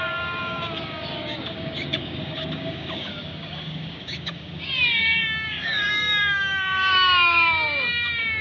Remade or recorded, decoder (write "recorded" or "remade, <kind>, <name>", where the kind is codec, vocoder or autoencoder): remade, codec, DAC